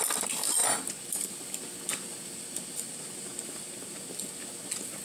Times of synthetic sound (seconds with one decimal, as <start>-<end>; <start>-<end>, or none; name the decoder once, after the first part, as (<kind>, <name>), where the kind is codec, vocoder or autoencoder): none